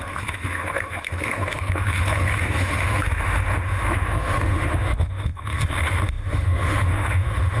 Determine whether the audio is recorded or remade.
remade